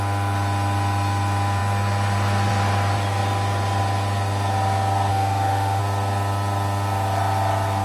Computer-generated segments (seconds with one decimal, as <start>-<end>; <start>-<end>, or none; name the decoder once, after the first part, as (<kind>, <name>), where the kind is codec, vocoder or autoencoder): 5.1-5.8 (autoencoder, DAC-VAE)